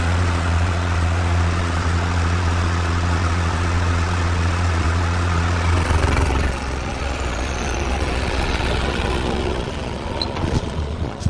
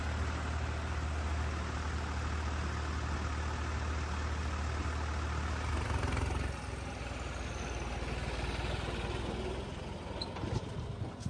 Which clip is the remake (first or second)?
first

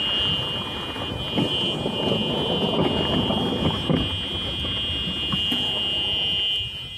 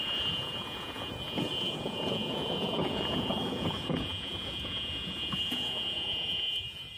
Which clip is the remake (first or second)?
second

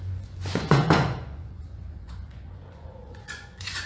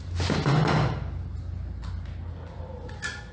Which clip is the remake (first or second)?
first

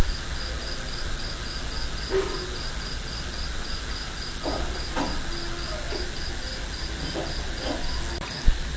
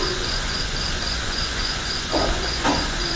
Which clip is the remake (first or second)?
second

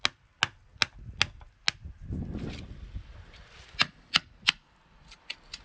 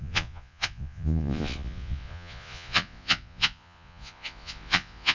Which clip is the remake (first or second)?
second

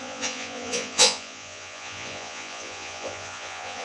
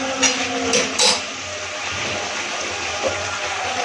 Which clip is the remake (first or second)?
first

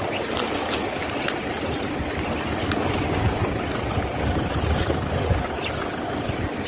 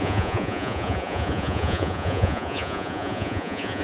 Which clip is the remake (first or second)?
second